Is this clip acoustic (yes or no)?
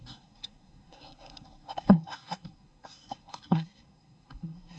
no